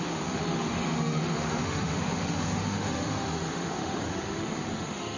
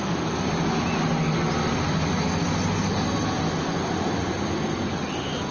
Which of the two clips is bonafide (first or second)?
second